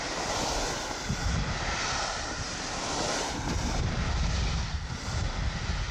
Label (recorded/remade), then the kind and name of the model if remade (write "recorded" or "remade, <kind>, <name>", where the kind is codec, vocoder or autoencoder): recorded